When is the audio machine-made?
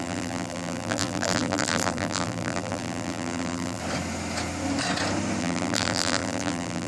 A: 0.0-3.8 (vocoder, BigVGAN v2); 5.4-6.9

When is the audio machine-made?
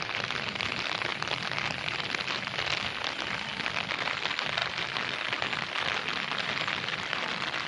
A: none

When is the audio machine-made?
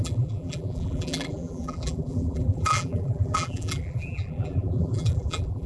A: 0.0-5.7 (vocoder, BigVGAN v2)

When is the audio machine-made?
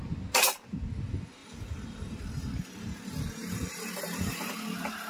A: 1.4-2.3 (vocoder, BigVGAN v2); 3.4-4.5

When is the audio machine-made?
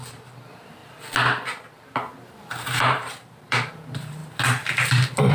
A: 0.0-0.8 (vocoder, BigVGAN v2); 2.3-4.2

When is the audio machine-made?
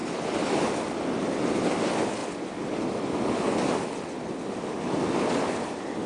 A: 0.0-6.1 (vocoder, BigVGAN v2)